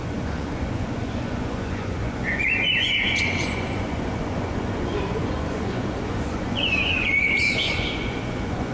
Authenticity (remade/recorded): remade